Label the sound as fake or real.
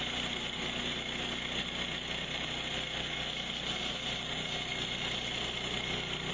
real